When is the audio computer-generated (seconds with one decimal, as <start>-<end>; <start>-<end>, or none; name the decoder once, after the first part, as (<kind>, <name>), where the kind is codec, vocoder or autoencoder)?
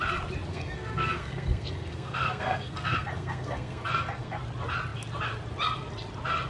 0.5-4.4 (codec, SNAC)